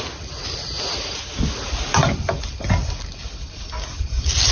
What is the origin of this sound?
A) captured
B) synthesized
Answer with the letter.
A